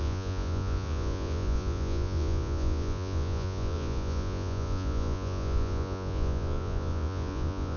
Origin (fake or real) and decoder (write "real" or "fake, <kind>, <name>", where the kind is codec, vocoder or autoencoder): fake, vocoder, Vocos